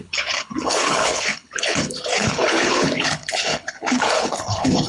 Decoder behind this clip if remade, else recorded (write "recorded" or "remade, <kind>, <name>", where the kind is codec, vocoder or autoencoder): remade, codec, HILCodec